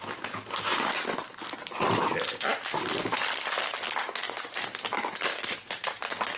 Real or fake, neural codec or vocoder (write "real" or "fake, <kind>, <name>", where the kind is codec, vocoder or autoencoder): real